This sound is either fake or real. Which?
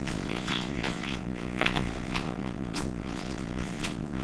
fake